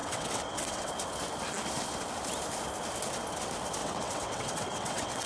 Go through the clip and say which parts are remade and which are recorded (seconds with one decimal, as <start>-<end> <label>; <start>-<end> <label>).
0.0-0.9 remade; 0.9-3.8 recorded; 3.8-5.3 remade